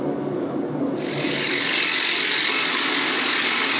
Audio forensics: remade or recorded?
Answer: remade